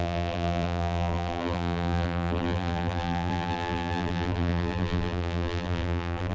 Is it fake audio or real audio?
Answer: fake